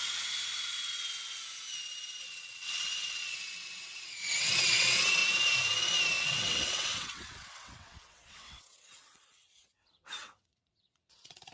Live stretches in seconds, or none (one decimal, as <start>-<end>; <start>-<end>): 0.0-2.2; 5.2-6.2